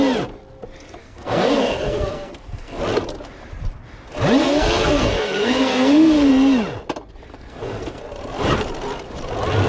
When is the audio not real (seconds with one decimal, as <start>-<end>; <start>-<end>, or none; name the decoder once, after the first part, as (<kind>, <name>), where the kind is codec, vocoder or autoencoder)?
1.0-2.8 (codec, SNAC); 4.4-6.3; 7.3-8.0